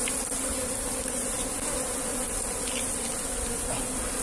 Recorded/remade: recorded